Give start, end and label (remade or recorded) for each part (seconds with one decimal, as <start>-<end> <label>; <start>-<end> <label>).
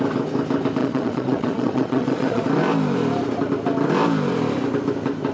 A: 0.0-0.8 recorded; 0.8-2.4 remade; 2.4-5.3 recorded